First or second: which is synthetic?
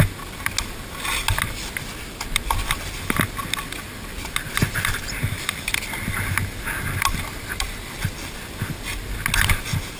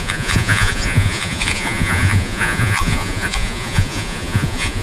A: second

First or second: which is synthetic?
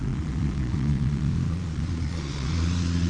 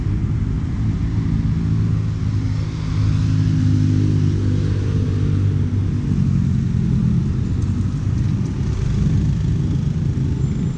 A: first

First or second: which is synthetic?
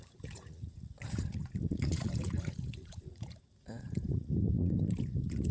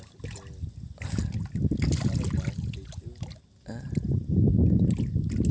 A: first